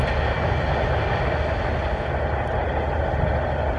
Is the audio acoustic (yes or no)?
yes